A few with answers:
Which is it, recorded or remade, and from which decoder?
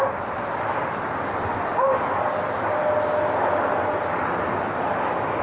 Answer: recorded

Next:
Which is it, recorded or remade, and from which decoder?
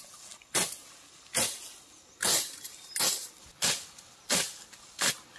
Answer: recorded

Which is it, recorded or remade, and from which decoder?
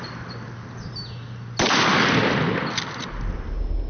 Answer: recorded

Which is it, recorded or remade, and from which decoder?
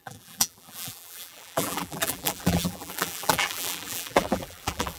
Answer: remade, vocoder, BigVGAN v2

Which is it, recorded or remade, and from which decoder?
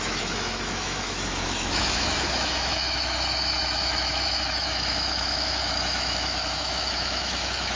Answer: remade, autoencoder, DAC-VAE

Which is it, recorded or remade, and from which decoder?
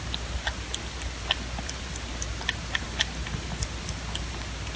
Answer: recorded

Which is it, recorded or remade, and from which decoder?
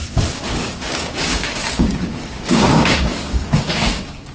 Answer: remade, codec, DAC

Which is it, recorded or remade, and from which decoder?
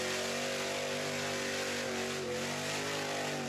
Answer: recorded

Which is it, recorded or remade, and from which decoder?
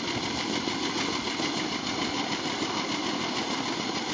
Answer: recorded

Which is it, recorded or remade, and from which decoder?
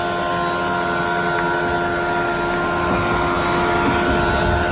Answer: recorded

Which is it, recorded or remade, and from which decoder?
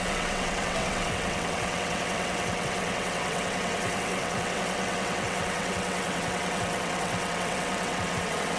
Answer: remade, vocoder, WaveNeXt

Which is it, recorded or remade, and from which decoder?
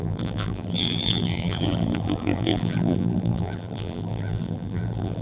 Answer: remade, vocoder, BigVGAN v2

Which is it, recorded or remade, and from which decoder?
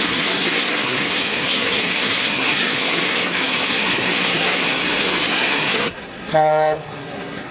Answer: remade, codec, SNAC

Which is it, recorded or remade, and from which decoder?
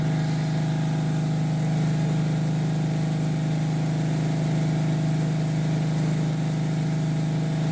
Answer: recorded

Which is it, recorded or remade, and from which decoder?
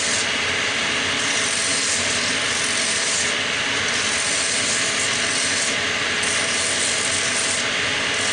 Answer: recorded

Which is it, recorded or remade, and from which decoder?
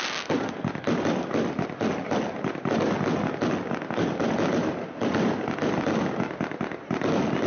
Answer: recorded